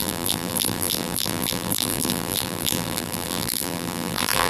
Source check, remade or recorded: remade